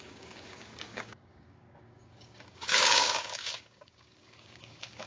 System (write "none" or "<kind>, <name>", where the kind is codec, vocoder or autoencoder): codec, DAC